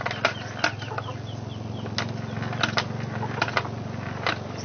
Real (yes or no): yes